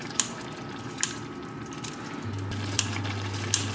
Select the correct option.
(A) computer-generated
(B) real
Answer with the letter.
B